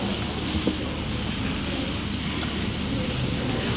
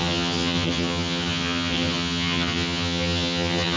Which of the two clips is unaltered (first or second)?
first